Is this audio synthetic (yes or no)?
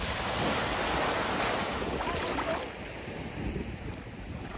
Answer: no